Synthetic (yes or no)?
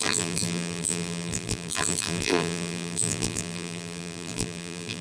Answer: yes